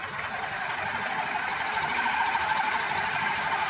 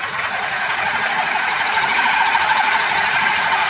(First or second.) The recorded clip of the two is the first